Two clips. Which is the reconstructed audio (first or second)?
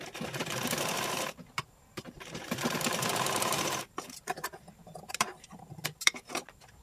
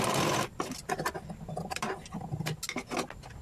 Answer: first